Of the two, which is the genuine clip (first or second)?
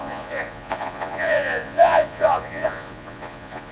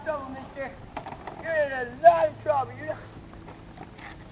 second